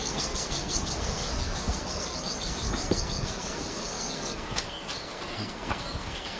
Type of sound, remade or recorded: remade